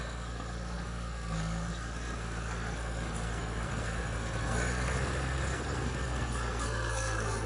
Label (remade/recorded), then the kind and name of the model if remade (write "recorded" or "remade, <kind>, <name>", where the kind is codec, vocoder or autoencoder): remade, codec, SNAC